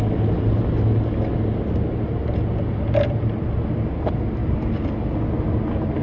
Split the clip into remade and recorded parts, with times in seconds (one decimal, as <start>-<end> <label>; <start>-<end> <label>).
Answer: 0.0-6.0 recorded